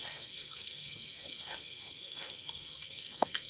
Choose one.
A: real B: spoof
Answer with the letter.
B